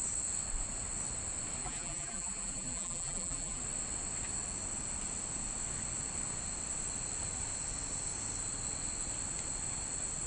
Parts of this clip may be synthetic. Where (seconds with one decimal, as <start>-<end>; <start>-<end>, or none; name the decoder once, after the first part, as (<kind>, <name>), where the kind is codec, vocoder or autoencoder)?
1.6-3.6 (vocoder, BigVGAN v2)